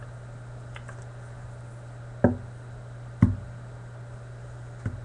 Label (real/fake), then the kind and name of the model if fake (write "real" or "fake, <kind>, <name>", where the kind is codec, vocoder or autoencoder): real